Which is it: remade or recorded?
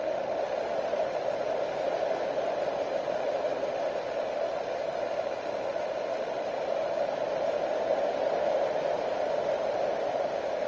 recorded